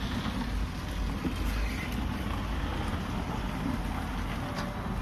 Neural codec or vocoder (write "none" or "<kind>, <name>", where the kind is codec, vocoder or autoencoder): none